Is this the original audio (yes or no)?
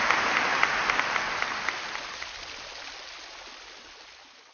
yes